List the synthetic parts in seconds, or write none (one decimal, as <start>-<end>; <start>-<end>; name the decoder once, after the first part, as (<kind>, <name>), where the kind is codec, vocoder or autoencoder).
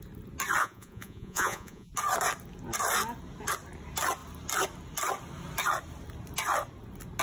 0.6-1.9 (vocoder, Vocos)